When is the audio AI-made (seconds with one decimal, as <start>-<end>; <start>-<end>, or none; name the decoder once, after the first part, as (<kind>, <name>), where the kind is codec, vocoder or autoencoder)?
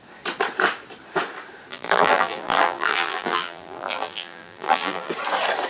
1.7-5.1 (vocoder, BigVGAN v2)